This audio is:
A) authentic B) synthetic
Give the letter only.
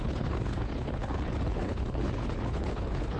B